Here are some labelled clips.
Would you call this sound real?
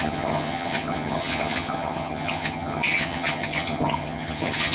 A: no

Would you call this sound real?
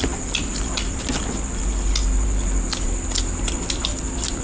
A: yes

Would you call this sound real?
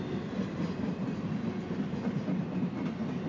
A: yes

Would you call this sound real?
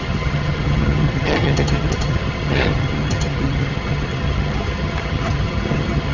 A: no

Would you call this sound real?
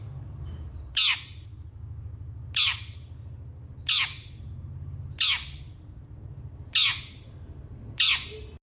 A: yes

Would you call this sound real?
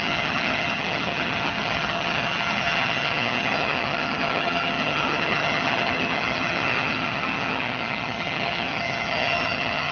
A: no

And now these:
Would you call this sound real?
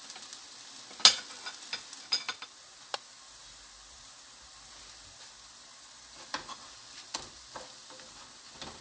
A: yes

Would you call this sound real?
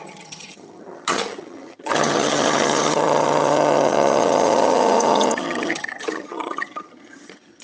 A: no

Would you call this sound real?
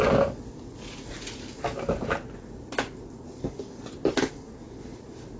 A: yes